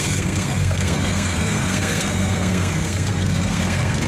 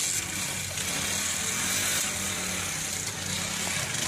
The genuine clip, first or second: second